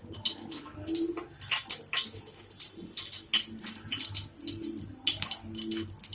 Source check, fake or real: real